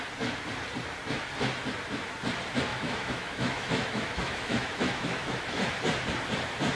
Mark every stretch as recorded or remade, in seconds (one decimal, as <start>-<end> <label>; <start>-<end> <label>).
0.0-2.7 recorded; 2.7-5.8 remade; 5.8-6.8 recorded